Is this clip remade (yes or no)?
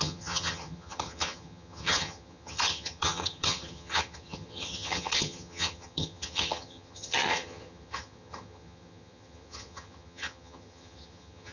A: yes